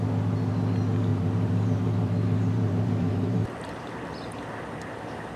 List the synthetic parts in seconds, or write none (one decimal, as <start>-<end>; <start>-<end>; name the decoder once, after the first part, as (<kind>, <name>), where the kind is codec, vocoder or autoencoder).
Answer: 1.1-4.3 (vocoder, BigVGAN v2)